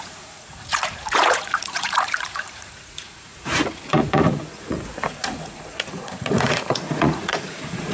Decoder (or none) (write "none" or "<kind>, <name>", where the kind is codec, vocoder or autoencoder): vocoder, Vocos